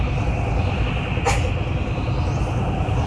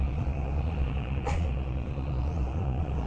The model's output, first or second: second